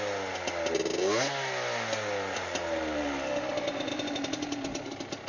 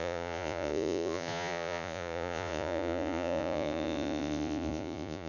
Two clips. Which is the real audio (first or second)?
first